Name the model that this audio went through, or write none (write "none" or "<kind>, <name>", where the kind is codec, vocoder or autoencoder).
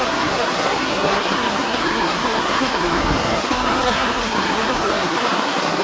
codec, SNAC